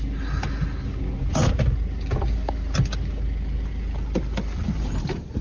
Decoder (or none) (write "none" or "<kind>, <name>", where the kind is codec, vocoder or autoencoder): none